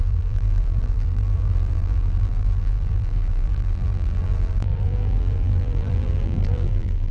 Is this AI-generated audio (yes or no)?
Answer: yes